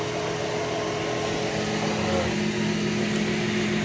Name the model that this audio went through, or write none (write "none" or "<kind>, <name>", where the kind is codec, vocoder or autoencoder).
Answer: none